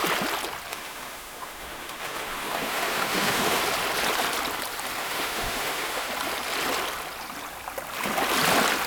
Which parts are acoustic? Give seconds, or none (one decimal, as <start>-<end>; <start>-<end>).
0.0-0.7; 3.6-5.0; 6.1-8.9